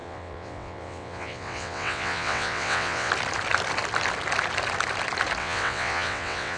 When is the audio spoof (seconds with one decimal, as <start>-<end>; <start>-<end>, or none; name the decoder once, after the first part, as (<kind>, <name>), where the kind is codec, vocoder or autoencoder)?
0.0-3.1 (vocoder, WaveNeXt); 5.4-6.6